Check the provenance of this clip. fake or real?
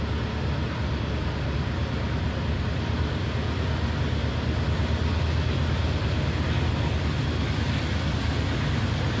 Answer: real